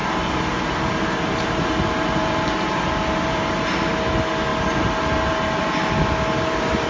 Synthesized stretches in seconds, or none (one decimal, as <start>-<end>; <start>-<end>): 0.0-3.9